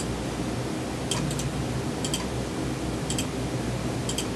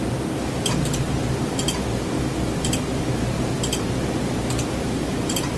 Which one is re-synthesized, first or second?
second